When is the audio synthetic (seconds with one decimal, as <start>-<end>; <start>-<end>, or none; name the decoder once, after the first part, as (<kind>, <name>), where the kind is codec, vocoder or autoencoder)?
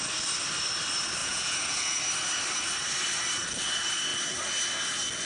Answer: 1.2-2.0 (vocoder, Vocos)